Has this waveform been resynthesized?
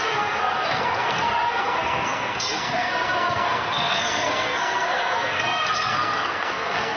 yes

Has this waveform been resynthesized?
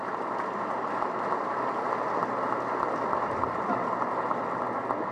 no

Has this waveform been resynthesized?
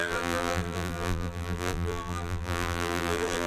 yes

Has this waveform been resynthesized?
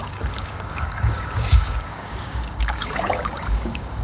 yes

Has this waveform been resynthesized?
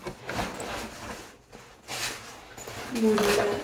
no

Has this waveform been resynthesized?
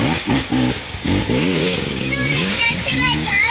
yes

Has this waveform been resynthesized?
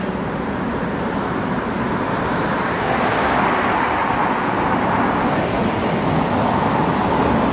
no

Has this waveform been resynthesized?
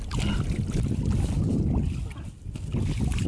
no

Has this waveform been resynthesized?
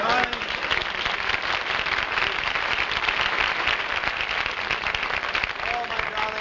no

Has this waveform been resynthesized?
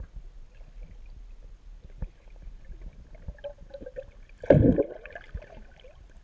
no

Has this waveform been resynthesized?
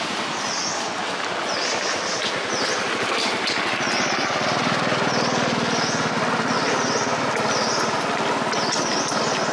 no